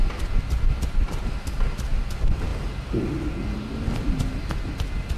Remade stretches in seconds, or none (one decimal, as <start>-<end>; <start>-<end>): none